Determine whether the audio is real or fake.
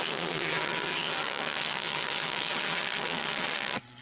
fake